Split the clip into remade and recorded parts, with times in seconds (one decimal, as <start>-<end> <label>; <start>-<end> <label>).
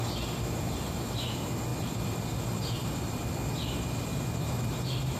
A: 0.0-1.7 recorded; 1.7-3.4 remade; 3.4-5.2 recorded